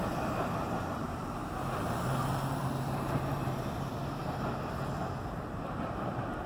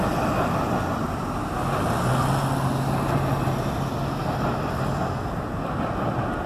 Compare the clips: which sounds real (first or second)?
second